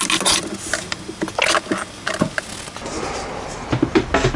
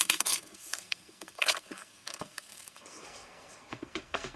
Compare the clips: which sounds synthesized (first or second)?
second